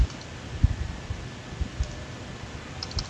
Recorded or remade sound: recorded